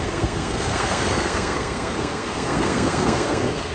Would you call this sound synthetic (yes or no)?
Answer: yes